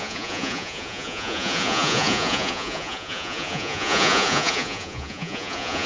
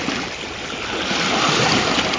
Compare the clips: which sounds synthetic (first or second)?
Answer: first